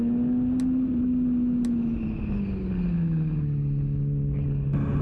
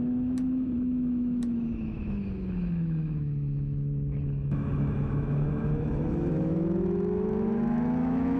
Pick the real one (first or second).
first